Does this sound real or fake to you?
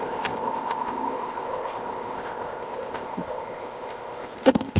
fake